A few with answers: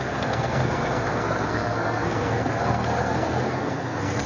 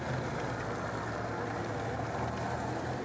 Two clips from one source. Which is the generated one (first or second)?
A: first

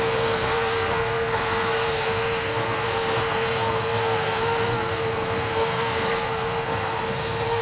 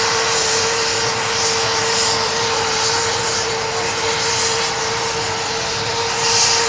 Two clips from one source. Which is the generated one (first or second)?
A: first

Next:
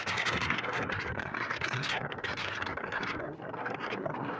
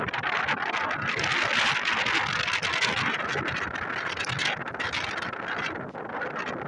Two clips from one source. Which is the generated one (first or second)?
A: first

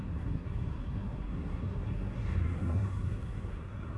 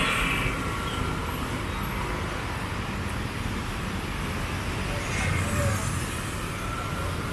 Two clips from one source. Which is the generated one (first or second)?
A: first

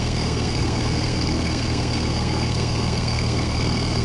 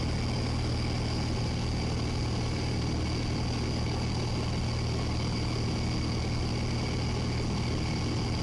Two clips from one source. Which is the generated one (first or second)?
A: first